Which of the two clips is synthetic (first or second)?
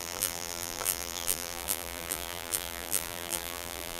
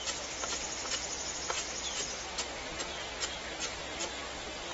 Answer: first